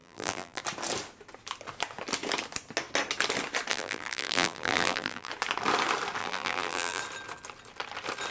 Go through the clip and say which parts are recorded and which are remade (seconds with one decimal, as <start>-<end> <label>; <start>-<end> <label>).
0.0-0.6 remade; 0.6-3.7 recorded; 3.7-5.3 remade; 5.3-6.2 recorded; 6.2-7.0 remade; 7.0-8.3 recorded

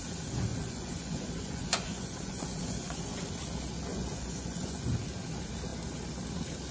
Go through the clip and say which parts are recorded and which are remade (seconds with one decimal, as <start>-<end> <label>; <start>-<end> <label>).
0.0-0.5 recorded; 0.5-3.2 remade; 3.2-3.9 recorded; 3.9-4.9 remade; 4.9-6.7 recorded

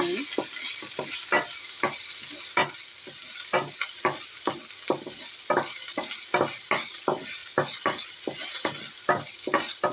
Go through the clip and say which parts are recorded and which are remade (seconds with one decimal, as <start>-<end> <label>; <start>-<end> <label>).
0.0-9.9 recorded